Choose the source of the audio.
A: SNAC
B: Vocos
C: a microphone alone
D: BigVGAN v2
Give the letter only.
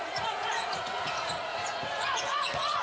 B